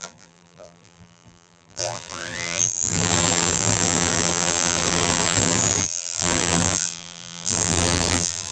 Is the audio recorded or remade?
remade